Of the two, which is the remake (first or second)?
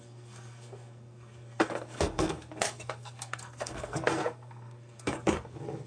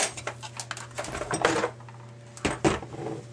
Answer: first